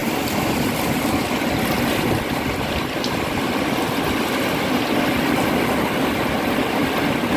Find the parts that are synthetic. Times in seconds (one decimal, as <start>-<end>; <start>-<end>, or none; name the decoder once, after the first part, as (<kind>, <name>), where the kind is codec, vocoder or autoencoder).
none